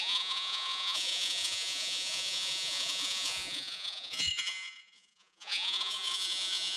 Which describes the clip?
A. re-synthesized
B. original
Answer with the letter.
A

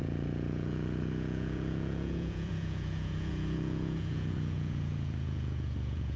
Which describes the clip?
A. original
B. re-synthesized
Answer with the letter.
B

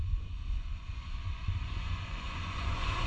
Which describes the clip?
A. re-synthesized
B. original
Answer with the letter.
A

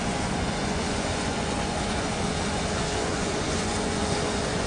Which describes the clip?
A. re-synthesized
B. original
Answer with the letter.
A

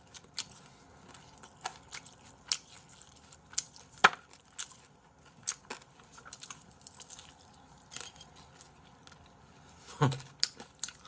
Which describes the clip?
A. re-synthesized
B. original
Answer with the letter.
B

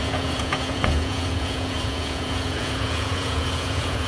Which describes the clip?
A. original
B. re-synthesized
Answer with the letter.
B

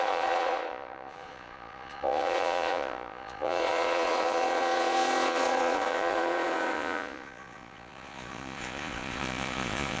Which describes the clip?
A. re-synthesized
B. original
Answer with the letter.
A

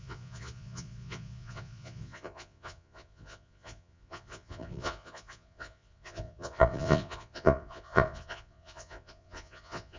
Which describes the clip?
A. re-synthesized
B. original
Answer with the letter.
A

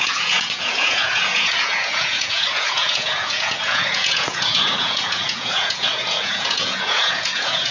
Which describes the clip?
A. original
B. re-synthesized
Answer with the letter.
B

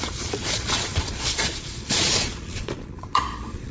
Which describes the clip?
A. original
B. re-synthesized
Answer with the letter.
B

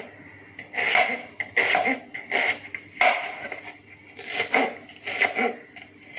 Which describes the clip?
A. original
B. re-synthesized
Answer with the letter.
A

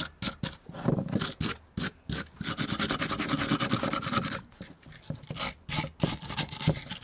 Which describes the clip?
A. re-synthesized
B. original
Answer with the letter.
B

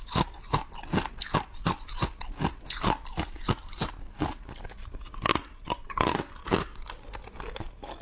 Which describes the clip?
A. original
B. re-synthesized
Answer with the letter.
A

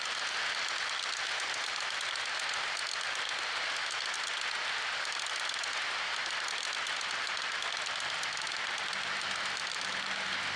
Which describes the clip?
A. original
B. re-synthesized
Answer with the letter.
A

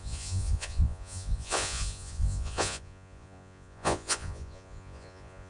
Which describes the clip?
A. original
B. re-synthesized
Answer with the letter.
B